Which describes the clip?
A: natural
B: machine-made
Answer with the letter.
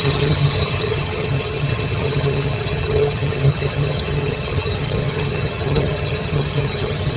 B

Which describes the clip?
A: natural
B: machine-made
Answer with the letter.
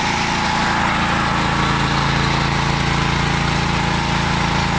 A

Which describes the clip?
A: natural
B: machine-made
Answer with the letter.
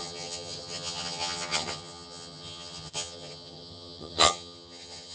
B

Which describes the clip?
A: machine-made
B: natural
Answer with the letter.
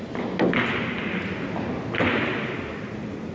B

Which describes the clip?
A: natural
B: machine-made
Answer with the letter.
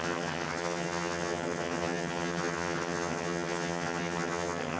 B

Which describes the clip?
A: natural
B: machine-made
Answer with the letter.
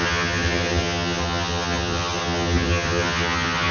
B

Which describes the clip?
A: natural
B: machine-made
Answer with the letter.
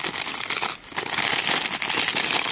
A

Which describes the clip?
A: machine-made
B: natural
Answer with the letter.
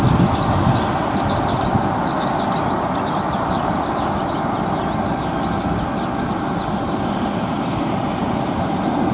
B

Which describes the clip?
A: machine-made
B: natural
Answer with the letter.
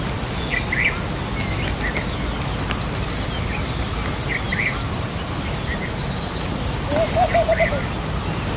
B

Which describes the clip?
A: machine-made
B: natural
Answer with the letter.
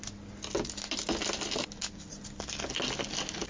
B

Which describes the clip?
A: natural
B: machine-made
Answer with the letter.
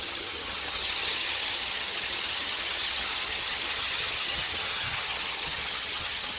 B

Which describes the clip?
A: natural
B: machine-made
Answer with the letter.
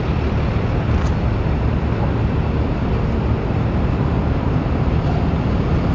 A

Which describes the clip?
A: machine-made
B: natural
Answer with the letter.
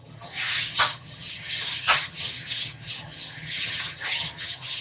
A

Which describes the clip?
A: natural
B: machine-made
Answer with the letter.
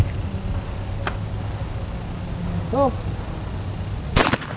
A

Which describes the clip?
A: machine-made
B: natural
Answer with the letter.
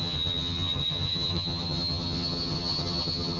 A